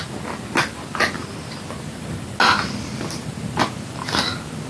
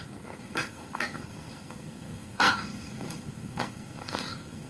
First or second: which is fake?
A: second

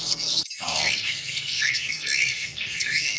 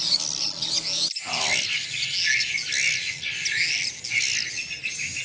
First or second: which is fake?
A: first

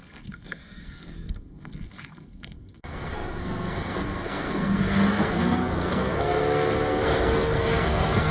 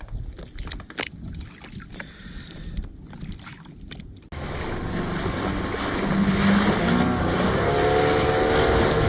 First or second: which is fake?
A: first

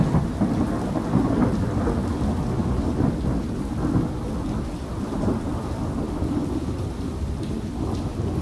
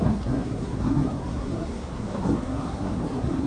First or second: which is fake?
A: second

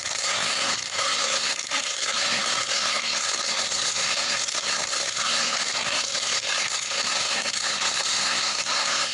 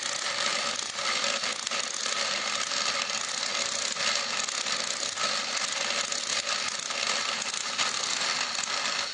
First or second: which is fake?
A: first